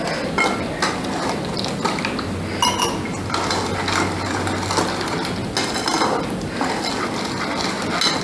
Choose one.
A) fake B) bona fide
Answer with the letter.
B